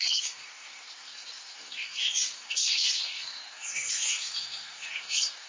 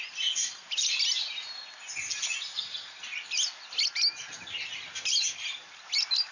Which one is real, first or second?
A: second